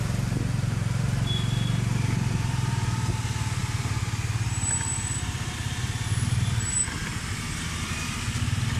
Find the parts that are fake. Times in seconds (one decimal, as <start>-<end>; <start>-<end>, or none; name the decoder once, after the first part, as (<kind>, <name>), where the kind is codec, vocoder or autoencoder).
none